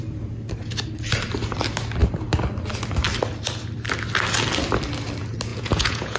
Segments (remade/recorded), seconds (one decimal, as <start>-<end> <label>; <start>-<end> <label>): 0.0-5.5 recorded; 5.5-6.2 remade

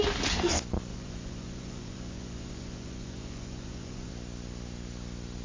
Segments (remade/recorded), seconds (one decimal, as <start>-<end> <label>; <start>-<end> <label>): 0.0-0.9 recorded; 0.9-4.1 remade; 4.1-5.4 recorded

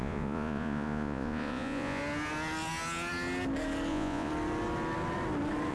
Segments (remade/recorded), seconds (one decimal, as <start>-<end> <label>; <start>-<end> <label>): 0.0-2.0 remade; 2.0-3.9 recorded; 3.9-4.3 remade; 4.3-5.7 recorded

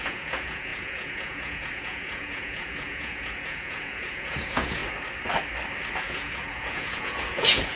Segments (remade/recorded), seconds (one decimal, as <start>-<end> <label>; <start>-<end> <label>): 0.0-4.8 remade; 4.8-5.9 recorded; 5.9-7.8 remade

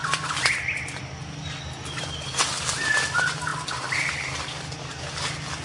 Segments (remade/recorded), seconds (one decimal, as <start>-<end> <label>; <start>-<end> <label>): 0.0-5.6 recorded

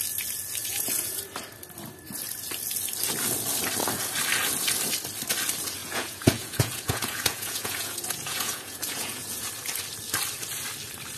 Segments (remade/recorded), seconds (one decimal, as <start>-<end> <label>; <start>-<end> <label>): 0.0-0.6 recorded; 0.6-1.2 remade; 1.2-5.8 recorded; 5.8-9.5 remade; 9.5-11.2 recorded

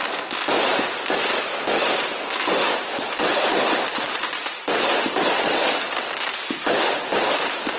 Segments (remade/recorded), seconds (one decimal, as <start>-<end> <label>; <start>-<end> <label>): 0.0-7.8 recorded